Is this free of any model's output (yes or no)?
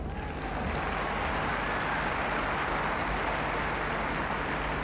yes